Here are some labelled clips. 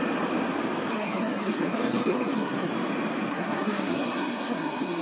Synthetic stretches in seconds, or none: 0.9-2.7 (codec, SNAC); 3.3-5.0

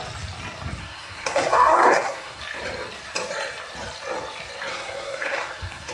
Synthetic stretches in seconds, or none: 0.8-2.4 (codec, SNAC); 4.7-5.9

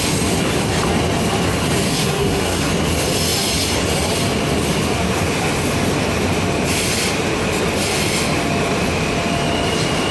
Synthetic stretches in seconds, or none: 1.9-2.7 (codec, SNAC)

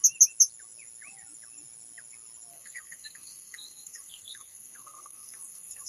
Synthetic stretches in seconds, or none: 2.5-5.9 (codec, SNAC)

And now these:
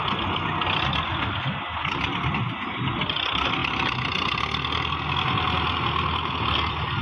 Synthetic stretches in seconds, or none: none

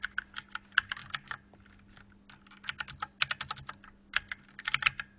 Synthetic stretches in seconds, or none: none

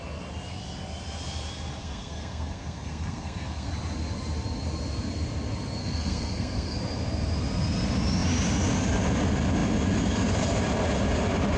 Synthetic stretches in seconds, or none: 1.8-3.7 (codec, SNAC); 5.8-6.8

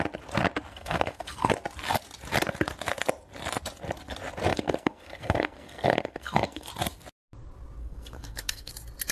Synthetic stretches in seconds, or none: 0.7-1.5 (codec, SNAC); 4.5-6.7; 7.8-8.7